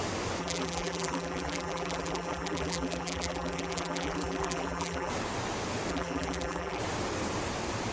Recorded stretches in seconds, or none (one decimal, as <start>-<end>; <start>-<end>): 0.0-0.4; 5.1-5.9; 6.8-7.9